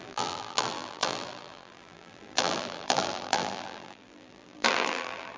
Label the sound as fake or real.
fake